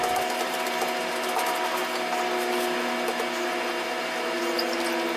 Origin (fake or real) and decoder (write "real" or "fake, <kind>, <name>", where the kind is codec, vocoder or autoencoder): real